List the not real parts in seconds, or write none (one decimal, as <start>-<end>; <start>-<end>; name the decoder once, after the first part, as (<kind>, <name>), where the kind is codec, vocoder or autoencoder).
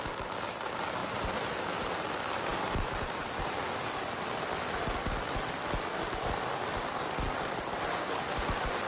none